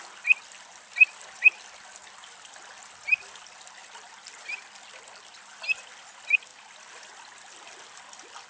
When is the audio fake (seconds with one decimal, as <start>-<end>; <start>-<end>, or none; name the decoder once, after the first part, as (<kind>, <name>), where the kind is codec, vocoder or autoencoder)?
none